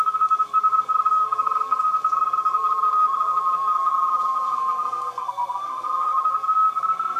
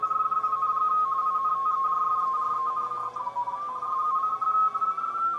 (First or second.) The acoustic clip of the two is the second